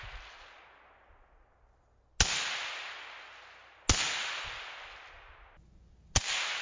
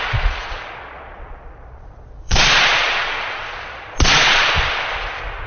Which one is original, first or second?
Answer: first